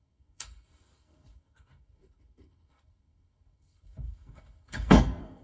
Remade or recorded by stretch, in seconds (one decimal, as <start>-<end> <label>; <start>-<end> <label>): 0.0-5.4 remade